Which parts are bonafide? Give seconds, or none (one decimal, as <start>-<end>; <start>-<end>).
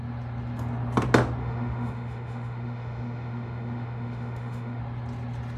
0.0-1.4; 4.8-5.6